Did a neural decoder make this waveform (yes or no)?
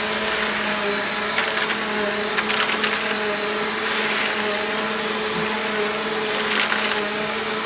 no